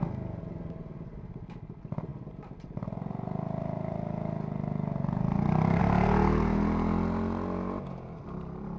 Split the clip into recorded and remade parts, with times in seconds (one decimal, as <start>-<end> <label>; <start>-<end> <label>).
0.0-8.8 recorded